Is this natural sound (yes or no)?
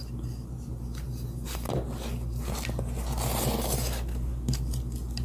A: yes